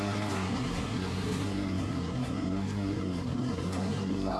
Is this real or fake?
fake